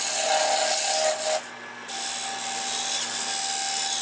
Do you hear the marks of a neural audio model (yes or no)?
no